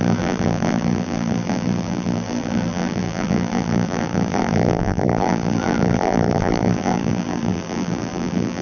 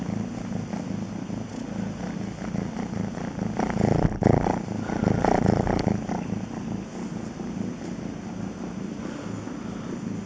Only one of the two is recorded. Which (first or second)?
second